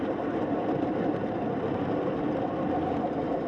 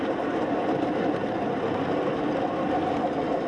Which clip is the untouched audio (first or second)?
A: second